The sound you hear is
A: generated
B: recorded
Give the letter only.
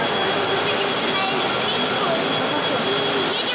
B